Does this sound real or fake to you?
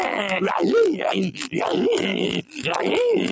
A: fake